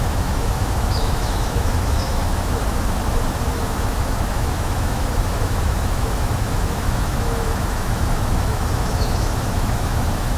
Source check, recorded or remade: remade